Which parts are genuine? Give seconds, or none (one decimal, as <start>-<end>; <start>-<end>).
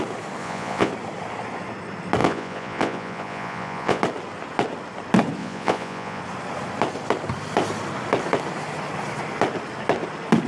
0.0-0.4; 0.9-2.2; 4.0-5.4; 6.2-10.5